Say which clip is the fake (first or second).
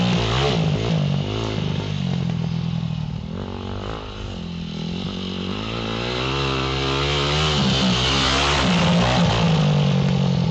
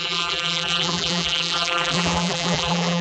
second